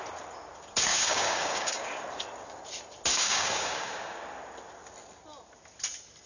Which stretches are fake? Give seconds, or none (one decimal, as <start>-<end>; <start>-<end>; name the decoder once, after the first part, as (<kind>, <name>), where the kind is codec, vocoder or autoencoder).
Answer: 0.9-2.0 (codec, DAC); 3.1-4.2

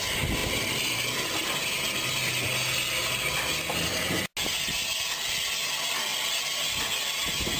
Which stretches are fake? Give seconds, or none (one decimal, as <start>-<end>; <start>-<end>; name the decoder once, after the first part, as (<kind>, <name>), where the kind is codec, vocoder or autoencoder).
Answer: 6.1-6.6 (vocoder, BigVGAN v2)

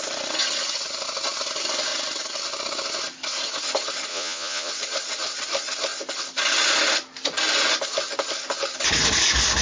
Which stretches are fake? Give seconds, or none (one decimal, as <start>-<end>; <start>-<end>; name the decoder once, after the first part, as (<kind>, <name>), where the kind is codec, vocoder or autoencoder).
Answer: 4.1-4.7 (vocoder, Vocos)

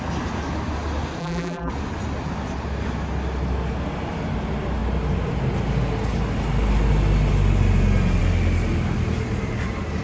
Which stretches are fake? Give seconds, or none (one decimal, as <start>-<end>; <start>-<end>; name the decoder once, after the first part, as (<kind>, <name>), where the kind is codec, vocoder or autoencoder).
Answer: 1.2-1.7 (vocoder, BigVGAN v2)

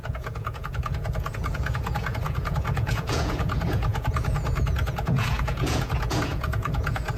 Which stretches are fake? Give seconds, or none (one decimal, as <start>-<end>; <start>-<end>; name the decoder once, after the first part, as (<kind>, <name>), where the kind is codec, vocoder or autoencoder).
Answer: 0.0-7.2 (vocoder, Vocos)

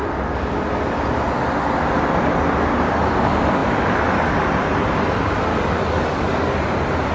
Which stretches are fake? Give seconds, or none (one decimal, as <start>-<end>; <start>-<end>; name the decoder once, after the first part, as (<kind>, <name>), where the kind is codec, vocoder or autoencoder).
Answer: 5.5-6.6 (codec, DAC)

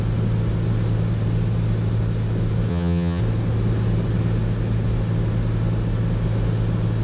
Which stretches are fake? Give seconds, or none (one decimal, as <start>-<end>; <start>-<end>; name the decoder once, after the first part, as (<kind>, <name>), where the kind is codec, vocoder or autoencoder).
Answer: 2.7-3.2 (vocoder, HiFi-GAN)

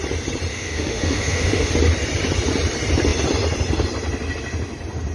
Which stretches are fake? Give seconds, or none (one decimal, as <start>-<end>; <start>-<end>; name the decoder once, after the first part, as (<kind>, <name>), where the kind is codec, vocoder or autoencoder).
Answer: 0.5-1.7 (autoencoder, DAC-VAE)